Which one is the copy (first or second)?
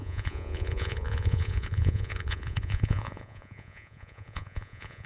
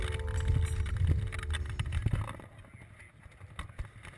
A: first